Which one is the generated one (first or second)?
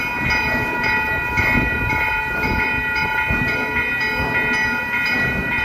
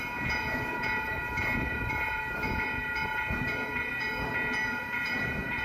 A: second